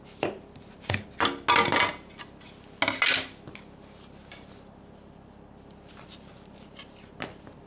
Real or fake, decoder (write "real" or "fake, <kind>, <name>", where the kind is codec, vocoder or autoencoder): real